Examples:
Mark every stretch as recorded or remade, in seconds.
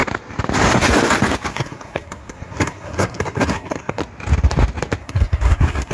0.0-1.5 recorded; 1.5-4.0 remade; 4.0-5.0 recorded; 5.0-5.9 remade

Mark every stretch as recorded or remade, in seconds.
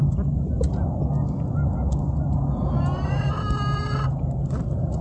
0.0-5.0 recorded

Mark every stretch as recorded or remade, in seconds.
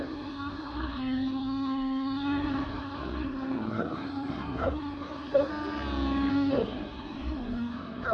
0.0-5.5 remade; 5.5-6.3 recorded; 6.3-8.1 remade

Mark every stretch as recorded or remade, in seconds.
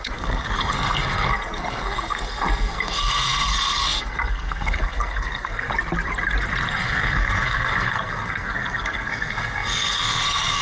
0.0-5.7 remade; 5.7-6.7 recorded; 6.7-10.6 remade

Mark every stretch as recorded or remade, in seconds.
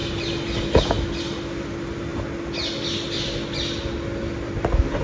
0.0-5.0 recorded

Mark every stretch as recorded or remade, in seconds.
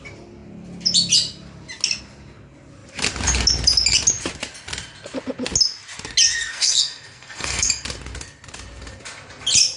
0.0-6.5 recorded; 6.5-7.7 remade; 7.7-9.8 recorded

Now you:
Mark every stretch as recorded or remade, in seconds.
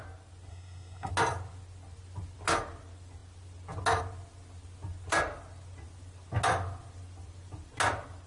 0.0-0.5 recorded; 0.5-1.1 remade; 1.1-8.3 recorded